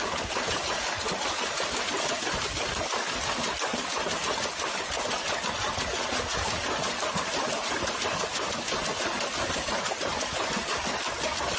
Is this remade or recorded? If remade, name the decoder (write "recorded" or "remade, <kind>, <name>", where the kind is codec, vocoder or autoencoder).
recorded